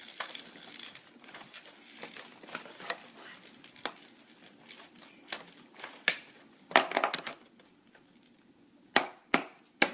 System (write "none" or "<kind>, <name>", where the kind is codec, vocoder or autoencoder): none